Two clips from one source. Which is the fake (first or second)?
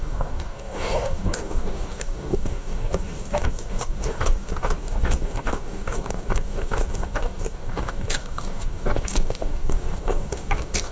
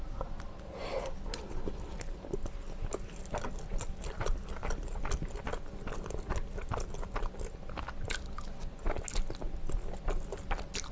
first